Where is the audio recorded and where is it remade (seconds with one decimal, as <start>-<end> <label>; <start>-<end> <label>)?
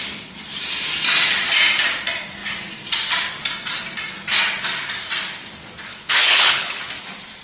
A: 0.0-5.9 recorded; 5.9-6.8 remade; 6.8-7.4 recorded